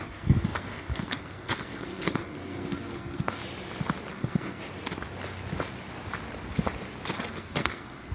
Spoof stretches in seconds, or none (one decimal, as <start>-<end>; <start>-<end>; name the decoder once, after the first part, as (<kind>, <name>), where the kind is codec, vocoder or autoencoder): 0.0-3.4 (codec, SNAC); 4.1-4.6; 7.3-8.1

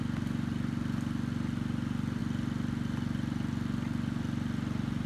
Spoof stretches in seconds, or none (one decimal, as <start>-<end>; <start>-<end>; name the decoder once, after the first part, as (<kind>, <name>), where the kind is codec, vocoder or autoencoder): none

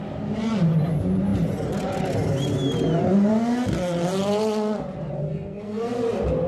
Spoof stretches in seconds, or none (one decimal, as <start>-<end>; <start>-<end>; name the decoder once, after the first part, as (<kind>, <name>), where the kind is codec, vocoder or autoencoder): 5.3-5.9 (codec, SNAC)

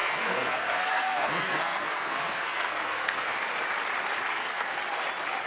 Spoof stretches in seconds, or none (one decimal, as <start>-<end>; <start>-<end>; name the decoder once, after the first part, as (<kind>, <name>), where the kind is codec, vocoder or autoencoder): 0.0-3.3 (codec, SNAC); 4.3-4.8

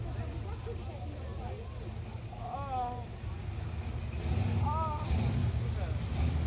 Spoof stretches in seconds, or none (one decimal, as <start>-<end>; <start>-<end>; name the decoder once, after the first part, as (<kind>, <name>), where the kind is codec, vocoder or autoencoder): none

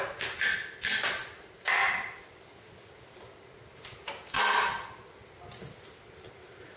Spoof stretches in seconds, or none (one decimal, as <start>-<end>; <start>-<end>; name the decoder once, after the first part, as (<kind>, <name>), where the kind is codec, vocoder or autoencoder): none

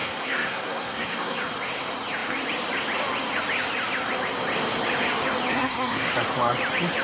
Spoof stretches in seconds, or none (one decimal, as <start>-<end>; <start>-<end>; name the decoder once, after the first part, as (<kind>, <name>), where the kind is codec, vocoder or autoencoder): 0.0-1.4 (codec, SNAC); 5.5-6.1

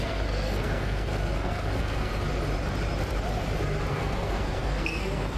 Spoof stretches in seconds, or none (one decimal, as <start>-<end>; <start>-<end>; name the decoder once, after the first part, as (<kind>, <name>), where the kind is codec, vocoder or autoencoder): 0.0-2.1 (codec, SNAC); 3.9-5.4